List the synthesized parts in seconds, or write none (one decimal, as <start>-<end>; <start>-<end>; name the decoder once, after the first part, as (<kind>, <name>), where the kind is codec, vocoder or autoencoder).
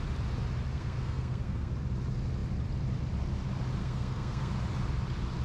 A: 0.7-1.7 (codec, SNAC); 3.8-4.5